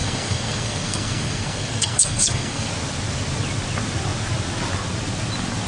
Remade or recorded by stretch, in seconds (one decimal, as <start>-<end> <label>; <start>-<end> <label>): 0.0-2.7 remade; 2.7-5.7 recorded